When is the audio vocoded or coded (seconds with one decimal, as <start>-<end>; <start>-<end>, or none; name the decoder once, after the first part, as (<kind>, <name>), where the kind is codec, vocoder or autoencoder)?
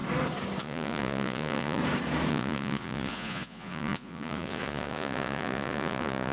0.6-1.8 (vocoder, Vocos); 2.3-6.3